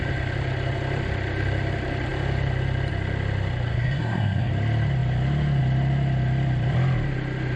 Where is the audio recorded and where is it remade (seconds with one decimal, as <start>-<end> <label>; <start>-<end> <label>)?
0.0-3.7 recorded; 3.7-4.5 remade; 4.5-7.6 recorded